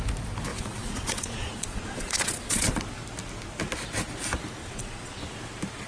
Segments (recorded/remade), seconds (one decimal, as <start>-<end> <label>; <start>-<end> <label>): 0.0-0.5 recorded; 0.5-2.8 remade; 2.8-4.6 recorded; 4.6-5.2 remade; 5.2-5.9 recorded

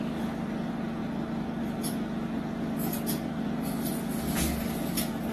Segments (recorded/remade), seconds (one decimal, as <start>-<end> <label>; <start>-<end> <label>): 0.0-5.3 recorded

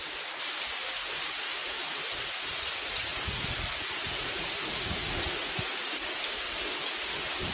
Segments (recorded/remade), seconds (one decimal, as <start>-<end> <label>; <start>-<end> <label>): 0.0-1.6 recorded; 1.6-6.1 remade; 6.1-7.5 recorded